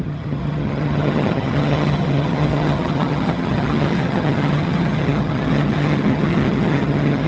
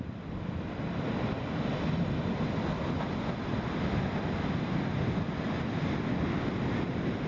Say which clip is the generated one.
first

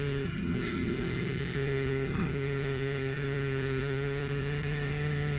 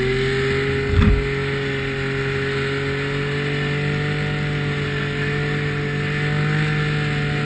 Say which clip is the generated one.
first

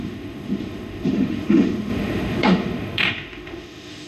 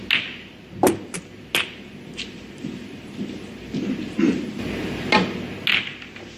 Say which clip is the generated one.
first